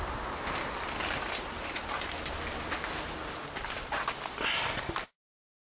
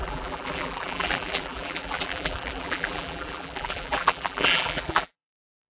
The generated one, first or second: second